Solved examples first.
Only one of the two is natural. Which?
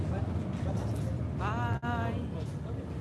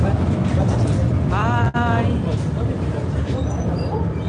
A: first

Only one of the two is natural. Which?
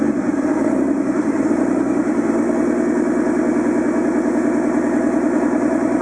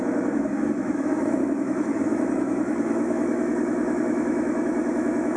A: first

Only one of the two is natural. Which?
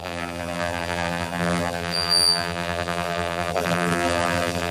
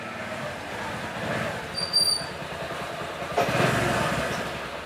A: second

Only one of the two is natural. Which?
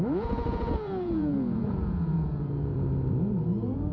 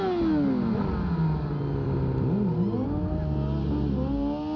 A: second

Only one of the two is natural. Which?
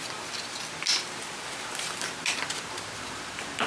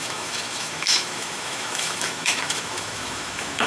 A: first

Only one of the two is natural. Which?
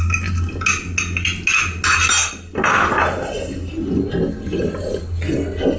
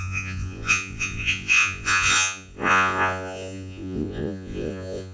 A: first